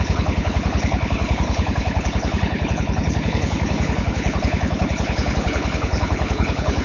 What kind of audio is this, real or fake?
fake